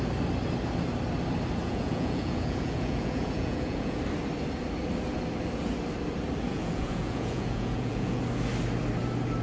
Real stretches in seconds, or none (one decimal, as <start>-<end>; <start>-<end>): 0.0-1.6; 4.0-6.5; 8.2-9.4